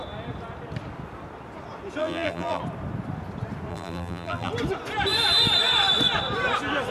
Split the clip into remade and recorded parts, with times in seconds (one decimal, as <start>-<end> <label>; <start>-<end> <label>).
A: 0.0-2.0 recorded; 2.0-2.6 remade; 2.6-3.7 recorded; 3.7-4.5 remade; 4.5-6.9 recorded